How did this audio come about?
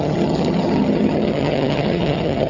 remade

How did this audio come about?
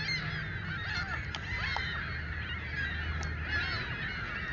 recorded